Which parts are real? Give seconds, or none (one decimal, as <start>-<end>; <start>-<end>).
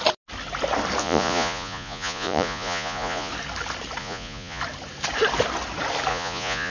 0.0-1.0; 3.3-4.0; 4.6-6.1